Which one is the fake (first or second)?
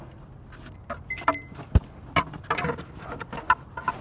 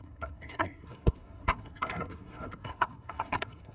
second